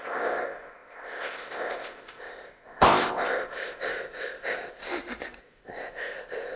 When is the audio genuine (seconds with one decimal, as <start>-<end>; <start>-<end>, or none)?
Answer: 4.8-5.4